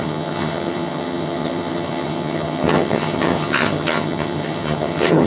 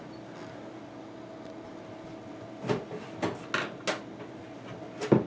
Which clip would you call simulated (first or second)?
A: first